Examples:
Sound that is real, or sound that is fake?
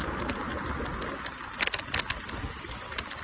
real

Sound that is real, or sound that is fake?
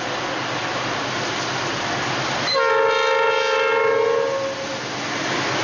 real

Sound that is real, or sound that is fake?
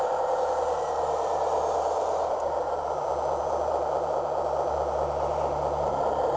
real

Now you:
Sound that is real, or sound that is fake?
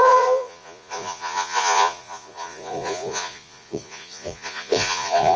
fake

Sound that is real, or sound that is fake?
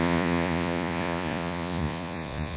fake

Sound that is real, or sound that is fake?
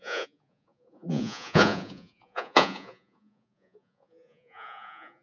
fake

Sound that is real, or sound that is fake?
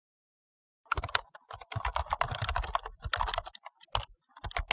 real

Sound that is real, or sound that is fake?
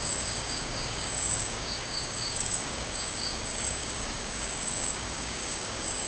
fake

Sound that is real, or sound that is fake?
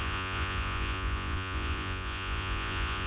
fake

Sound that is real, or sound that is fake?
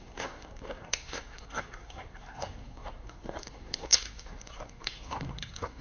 fake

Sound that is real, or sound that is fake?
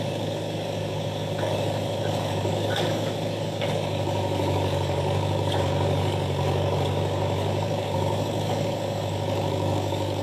fake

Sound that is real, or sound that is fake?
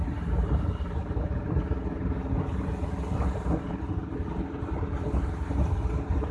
real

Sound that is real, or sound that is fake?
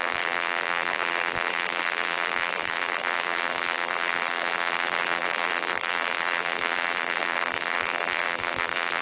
fake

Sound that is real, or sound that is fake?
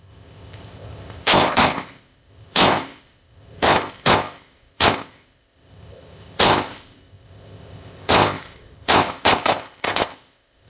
fake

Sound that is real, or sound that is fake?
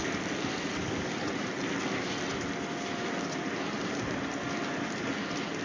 real